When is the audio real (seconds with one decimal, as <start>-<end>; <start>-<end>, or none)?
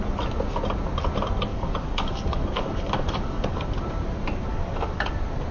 0.0-1.5; 3.7-4.5; 5.1-5.5